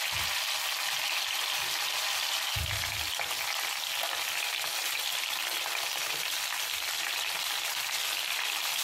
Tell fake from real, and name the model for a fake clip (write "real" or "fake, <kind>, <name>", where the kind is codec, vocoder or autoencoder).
real